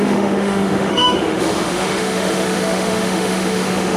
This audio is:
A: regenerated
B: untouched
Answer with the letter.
A